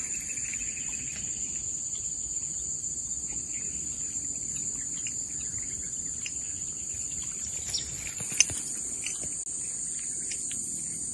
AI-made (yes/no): no